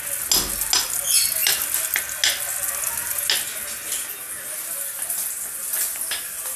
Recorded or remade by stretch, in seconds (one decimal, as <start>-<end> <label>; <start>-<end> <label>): 0.0-6.6 recorded